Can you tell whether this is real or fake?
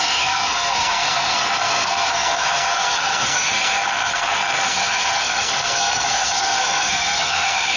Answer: fake